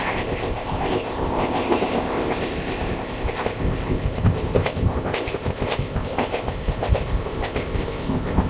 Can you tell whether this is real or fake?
fake